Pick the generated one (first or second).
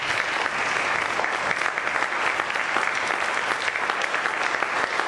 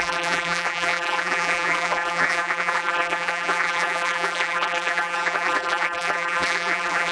second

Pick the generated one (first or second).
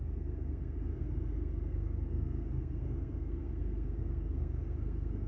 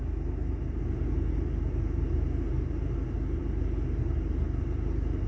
first